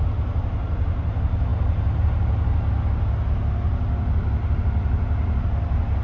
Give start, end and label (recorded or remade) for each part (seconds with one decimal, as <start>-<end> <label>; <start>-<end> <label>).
0.0-6.0 recorded